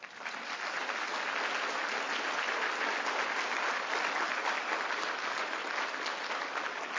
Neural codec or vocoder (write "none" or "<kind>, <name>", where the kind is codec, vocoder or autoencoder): none